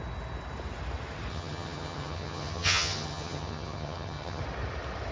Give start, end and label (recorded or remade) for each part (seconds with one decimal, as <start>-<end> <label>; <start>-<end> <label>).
0.0-1.3 recorded; 1.3-4.4 remade; 4.4-5.1 recorded